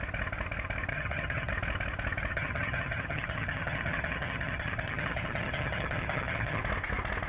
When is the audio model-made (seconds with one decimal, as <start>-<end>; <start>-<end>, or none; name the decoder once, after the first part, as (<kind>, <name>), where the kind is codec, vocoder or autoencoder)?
0.9-1.5 (vocoder, HiFi-GAN); 2.3-6.6